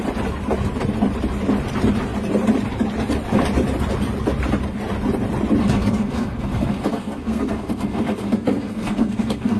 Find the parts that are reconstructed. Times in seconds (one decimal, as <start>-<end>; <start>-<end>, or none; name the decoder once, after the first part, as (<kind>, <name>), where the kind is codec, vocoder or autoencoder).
5.6-9.6 (codec, SNAC)